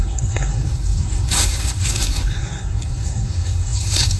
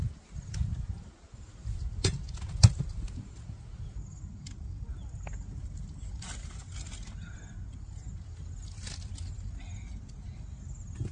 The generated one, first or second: first